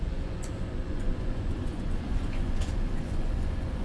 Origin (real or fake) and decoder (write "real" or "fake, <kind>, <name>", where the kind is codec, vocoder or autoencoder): fake, vocoder, Vocos